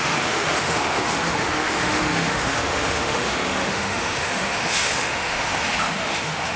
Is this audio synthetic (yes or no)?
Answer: yes